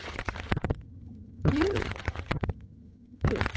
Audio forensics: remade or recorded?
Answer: remade